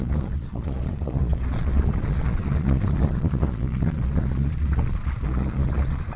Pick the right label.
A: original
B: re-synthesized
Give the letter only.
B